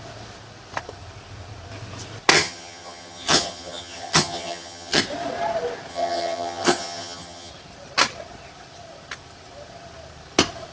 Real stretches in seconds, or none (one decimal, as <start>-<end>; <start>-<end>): 0.0-2.3; 5.0-5.9; 7.5-10.7